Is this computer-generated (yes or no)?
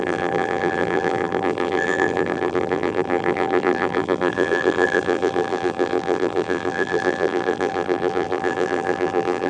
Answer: yes